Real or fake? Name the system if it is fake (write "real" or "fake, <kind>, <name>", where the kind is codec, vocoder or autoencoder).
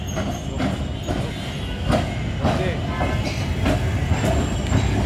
real